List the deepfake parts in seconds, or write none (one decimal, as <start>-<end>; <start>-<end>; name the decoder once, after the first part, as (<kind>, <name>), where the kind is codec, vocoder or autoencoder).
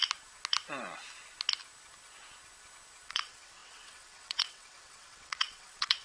3.1-6.0 (vocoder, WaveNeXt)